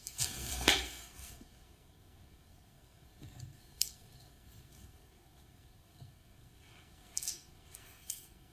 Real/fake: fake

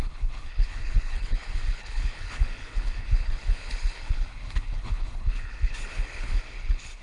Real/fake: fake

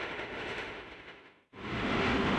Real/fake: fake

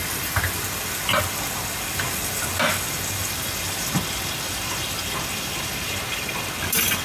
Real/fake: real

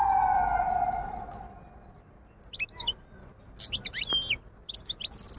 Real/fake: real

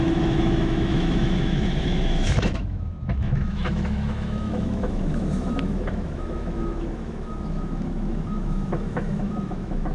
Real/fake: fake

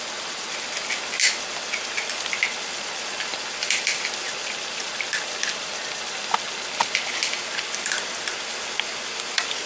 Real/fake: real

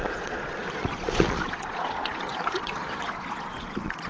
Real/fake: fake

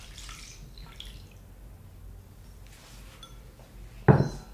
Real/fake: real